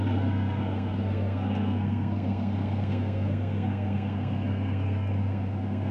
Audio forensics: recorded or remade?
remade